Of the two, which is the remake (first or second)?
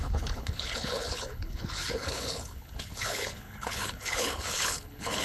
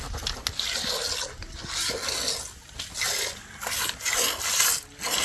first